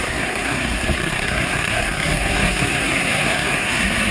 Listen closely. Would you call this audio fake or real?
fake